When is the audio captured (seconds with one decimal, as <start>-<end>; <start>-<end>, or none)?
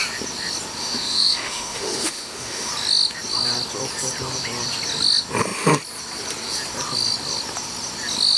0.0-0.8; 2.7-8.4